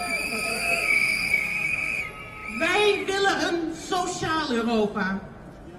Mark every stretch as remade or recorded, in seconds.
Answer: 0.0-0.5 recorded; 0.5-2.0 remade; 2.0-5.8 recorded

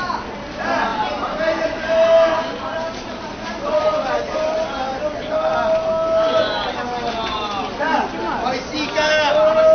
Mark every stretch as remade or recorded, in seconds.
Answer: 0.0-0.9 recorded; 0.9-4.1 remade; 4.1-9.7 recorded

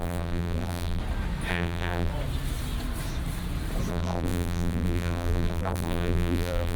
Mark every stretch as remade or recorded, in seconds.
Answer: 0.0-1.0 remade; 1.0-1.5 recorded; 1.5-2.1 remade; 2.1-3.9 recorded; 3.9-6.8 remade